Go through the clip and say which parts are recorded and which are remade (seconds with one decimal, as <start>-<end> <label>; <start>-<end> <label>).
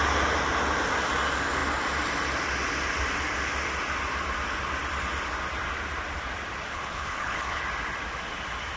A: 0.0-6.7 recorded; 6.7-7.6 remade; 7.6-8.8 recorded